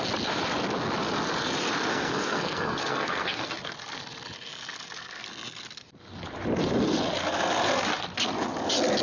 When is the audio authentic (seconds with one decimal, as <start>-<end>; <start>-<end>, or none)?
0.0-1.9; 3.5-9.0